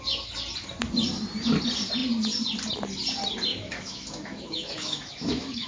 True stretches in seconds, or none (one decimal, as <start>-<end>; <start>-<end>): 0.0-3.5